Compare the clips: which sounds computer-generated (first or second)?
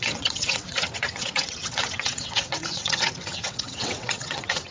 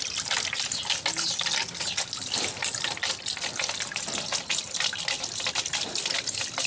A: first